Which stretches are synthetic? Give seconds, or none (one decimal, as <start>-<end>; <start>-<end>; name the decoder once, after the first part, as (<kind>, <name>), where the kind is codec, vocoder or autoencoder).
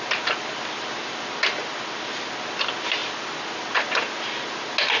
none